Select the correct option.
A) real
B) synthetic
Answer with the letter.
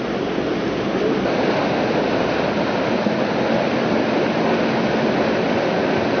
A